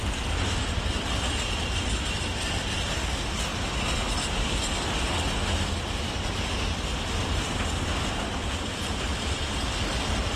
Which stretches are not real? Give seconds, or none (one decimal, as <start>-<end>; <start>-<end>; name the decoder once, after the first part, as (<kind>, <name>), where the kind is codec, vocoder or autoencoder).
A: none